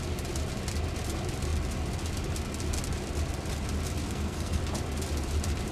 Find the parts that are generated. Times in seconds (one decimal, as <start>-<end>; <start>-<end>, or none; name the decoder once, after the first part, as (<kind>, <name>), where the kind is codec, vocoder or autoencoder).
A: 4.0-4.6 (codec, SNAC)